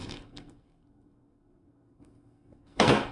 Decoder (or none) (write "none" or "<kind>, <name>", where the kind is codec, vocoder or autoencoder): codec, SNAC